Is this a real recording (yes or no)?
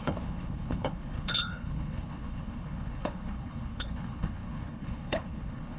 no